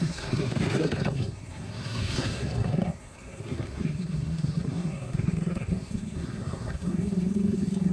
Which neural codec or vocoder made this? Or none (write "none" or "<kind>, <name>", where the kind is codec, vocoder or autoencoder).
codec, SNAC